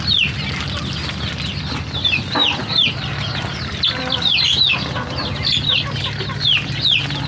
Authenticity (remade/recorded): recorded